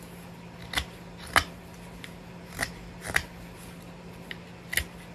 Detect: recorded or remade recorded